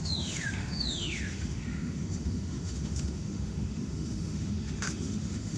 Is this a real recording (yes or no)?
no